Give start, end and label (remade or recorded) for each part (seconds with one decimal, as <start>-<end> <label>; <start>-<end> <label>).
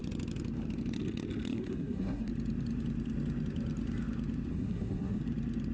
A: 0.0-1.5 recorded; 1.5-2.3 remade; 2.3-4.5 recorded; 4.5-5.2 remade; 5.2-5.7 recorded